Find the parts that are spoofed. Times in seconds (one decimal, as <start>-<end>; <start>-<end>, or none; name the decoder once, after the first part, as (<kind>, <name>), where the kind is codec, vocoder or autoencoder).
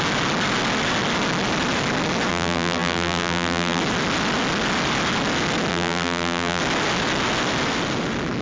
2.3-3.8 (vocoder, BigVGAN v2); 5.7-6.6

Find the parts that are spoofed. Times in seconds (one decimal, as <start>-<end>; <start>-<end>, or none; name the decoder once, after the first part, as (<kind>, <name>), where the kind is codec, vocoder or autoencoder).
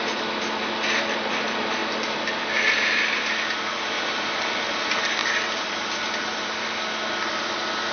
5.2-6.0 (vocoder, BigVGAN v2)